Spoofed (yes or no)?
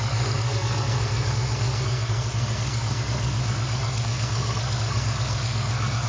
yes